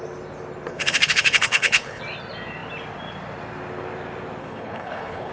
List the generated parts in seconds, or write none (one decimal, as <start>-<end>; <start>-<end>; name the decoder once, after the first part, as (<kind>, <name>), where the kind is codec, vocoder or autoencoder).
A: 0.7-2.0 (codec, HILCodec); 4.4-5.3